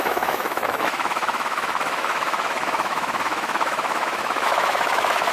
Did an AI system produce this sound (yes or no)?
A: yes